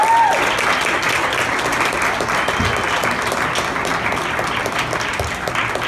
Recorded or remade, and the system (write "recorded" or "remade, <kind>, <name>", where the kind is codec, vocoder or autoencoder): recorded